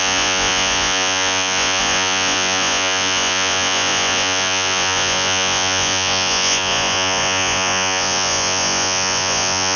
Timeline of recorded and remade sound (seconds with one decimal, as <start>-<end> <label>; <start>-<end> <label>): 0.0-9.8 remade